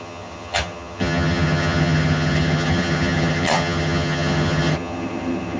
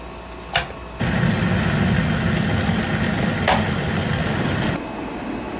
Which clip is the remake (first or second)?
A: first